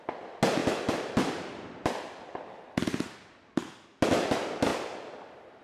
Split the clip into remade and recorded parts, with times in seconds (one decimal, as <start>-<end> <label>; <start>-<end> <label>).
0.0-0.6 recorded; 0.6-2.6 remade; 2.6-4.7 recorded; 4.7-5.6 remade